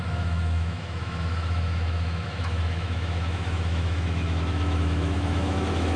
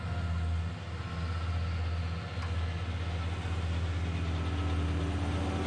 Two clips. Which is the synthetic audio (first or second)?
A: first